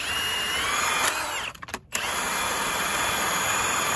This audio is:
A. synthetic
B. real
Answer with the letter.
A